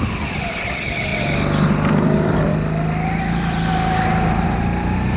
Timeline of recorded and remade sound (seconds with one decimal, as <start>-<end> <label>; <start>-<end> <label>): 0.0-5.2 recorded